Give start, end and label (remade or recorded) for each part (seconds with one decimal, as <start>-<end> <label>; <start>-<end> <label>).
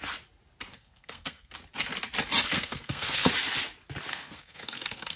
0.0-0.7 recorded; 0.7-1.5 remade; 1.5-2.5 recorded; 2.5-3.3 remade; 3.3-4.1 recorded; 4.1-5.2 remade